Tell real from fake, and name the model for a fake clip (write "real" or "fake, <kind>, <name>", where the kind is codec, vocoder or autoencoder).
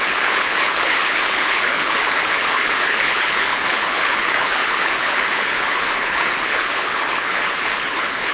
fake, codec, HILCodec